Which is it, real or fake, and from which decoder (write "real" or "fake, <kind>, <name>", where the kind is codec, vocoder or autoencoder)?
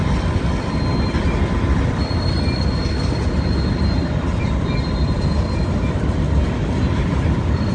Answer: real